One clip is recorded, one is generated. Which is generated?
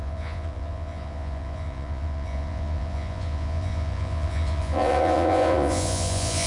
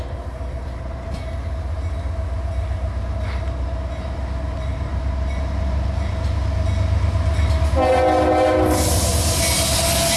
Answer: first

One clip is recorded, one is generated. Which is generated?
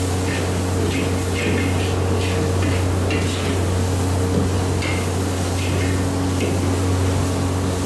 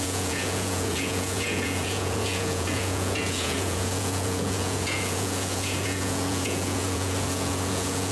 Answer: second